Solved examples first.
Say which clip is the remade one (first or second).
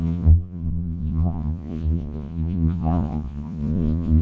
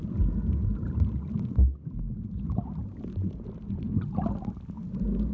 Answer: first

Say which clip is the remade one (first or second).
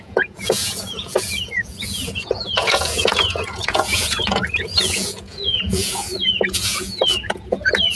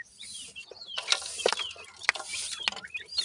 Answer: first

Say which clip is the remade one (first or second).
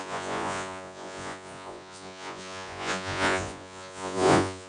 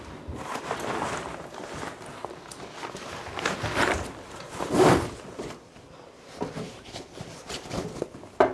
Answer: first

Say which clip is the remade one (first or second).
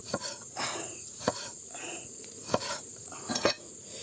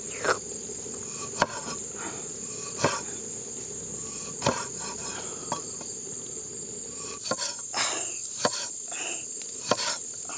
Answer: first